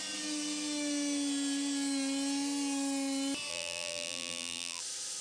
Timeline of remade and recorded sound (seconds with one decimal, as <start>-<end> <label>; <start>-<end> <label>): 0.0-3.5 recorded; 3.5-4.8 remade; 4.8-5.2 recorded